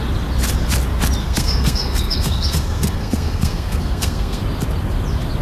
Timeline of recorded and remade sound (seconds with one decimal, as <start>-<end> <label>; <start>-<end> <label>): 0.0-1.2 recorded; 1.2-4.4 remade; 4.4-5.4 recorded